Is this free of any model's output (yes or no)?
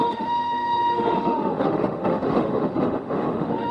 no